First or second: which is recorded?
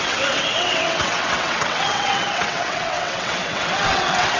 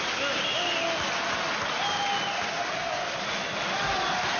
second